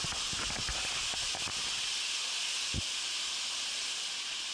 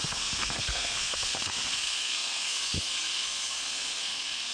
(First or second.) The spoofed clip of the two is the second